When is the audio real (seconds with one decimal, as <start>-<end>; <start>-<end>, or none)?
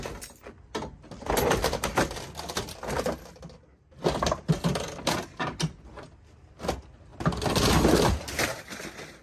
0.0-9.2